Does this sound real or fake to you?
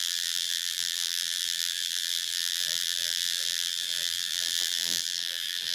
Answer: fake